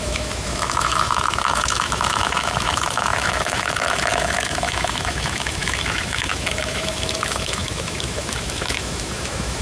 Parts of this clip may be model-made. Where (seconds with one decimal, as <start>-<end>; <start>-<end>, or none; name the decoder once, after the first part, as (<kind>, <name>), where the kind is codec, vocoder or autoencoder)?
0.0-9.6 (autoencoder, DAC-VAE)